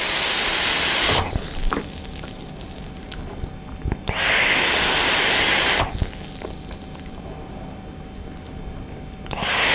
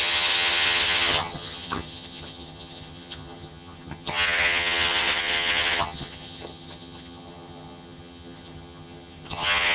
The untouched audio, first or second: first